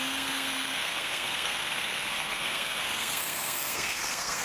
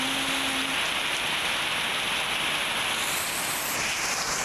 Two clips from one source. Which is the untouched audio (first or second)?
second